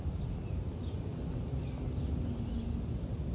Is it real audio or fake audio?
real